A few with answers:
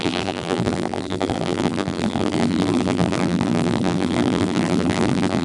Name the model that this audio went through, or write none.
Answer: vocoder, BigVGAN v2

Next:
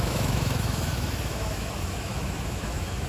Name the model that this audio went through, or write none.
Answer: autoencoder, DAC-VAE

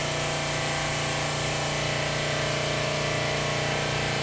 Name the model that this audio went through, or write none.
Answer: none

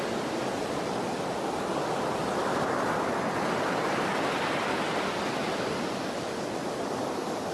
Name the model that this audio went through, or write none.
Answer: none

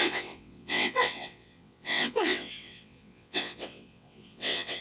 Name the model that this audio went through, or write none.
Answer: vocoder, WaveNeXt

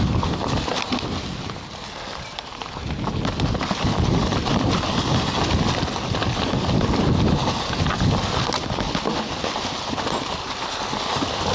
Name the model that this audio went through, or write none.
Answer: none